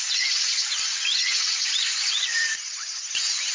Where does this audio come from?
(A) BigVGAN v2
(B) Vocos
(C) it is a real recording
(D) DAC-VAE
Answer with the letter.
B